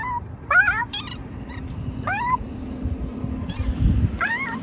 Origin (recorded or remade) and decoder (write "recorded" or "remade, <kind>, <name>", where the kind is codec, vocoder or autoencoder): recorded